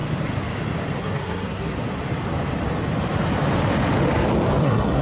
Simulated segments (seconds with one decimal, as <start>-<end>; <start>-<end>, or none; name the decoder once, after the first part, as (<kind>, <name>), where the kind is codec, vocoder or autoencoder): 1.0-1.7 (codec, SNAC); 4.6-5.0